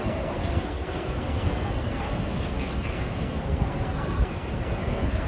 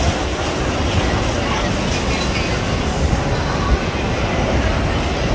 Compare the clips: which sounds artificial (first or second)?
first